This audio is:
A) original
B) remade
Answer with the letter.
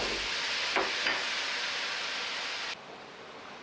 A